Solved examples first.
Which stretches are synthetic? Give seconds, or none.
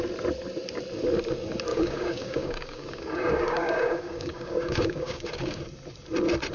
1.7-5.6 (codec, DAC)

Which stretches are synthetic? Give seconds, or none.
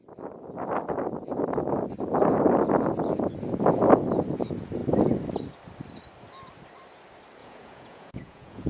7.4-8.7 (vocoder, Vocos)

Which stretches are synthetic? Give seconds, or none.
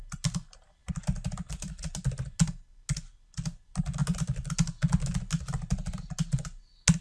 none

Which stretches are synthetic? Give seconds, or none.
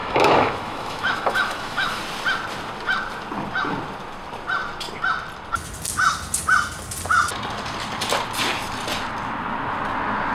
0.0-2.0 (autoencoder, DAC-VAE)